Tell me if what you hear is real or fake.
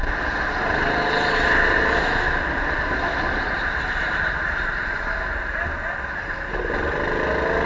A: real